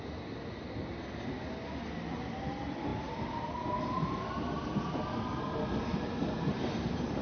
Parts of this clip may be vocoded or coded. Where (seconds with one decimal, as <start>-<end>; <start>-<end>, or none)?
none